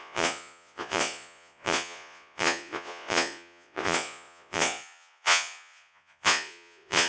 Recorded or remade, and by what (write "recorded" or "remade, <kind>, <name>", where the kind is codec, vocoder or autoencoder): remade, vocoder, Vocos